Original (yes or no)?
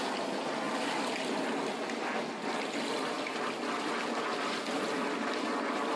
yes